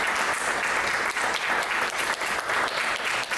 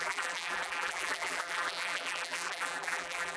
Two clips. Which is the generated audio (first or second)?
second